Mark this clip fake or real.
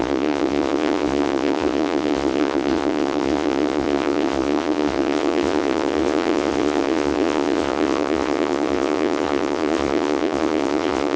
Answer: fake